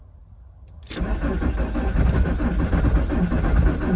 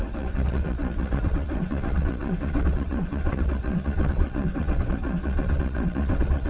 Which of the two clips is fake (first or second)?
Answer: second